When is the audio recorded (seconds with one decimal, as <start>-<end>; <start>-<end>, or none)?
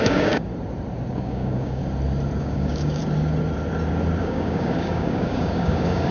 0.5-1.1; 1.8-2.4; 3.0-4.2